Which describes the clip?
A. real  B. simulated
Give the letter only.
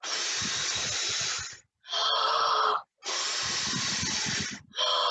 A